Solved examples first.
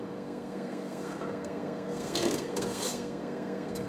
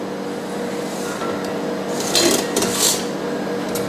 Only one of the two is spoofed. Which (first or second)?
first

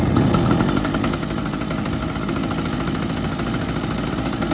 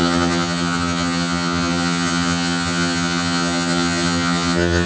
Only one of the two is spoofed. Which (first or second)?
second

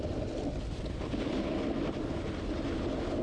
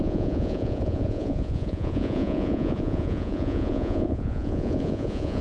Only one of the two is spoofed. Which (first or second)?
second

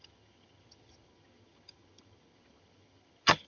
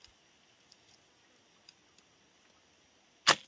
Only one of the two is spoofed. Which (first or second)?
first